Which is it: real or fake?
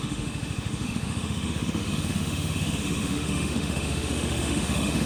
fake